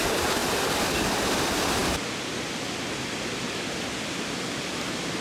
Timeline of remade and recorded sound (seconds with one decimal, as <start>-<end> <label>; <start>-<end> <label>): 0.0-5.2 recorded